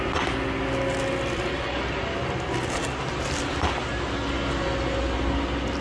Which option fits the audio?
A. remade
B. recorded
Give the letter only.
B